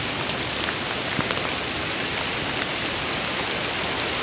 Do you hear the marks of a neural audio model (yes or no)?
no